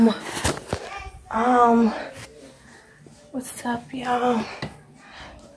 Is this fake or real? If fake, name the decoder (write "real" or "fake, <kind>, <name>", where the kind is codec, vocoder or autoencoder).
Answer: real